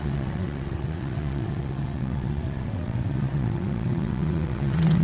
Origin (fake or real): fake